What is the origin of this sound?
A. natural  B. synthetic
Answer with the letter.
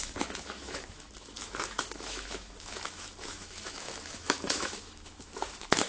B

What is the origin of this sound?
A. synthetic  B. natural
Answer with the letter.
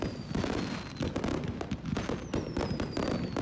B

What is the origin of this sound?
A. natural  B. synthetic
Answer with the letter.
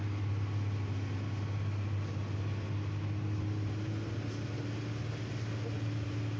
A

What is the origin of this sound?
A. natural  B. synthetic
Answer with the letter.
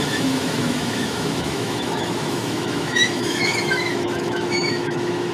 B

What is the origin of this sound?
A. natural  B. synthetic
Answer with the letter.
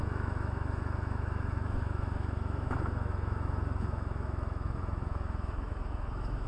B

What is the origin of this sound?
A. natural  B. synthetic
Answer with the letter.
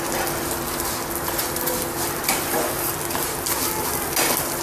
A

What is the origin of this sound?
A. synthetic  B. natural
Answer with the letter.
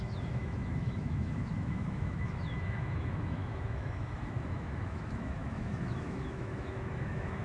A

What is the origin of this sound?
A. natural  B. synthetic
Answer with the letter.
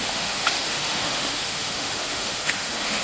B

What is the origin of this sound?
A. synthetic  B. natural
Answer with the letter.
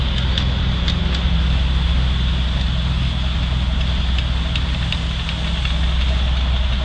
B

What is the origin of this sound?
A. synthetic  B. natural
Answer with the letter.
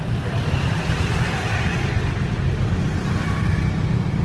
B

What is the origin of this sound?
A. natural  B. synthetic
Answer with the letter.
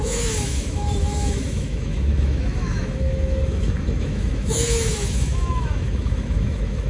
B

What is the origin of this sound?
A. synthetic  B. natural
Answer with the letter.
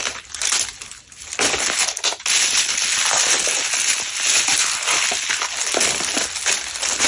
B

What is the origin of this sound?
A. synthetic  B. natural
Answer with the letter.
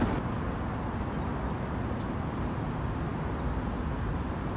B